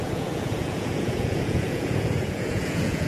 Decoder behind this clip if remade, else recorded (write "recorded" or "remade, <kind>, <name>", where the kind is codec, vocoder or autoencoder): remade, vocoder, Vocos